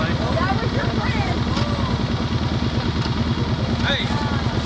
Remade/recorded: recorded